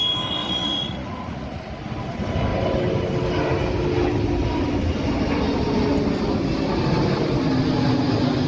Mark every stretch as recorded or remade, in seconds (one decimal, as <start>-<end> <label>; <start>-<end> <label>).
0.0-0.4 recorded; 0.4-1.7 remade; 1.7-8.5 recorded